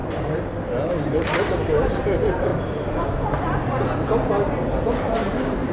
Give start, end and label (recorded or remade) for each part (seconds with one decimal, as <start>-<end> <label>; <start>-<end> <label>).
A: 0.0-1.6 recorded; 1.6-2.5 remade; 2.5-4.5 recorded; 4.5-5.7 remade